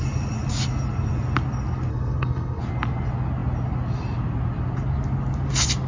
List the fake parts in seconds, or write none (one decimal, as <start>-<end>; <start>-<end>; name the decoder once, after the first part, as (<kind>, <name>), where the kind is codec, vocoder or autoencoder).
1.9-2.6 (codec, SNAC)